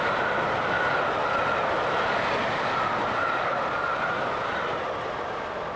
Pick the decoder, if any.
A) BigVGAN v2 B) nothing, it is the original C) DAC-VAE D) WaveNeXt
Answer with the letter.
B